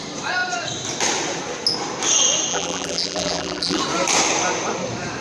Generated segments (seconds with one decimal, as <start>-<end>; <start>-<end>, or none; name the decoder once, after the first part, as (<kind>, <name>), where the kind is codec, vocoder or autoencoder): 2.5-3.8 (vocoder, BigVGAN v2)